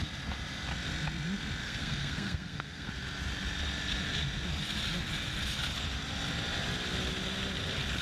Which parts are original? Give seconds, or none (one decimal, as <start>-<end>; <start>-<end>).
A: 0.0-1.6; 2.9-8.0